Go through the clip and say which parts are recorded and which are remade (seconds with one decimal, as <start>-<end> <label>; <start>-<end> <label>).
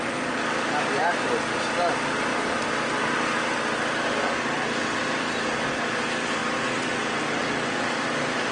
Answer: 0.0-2.3 remade; 2.3-3.0 recorded; 3.0-8.5 remade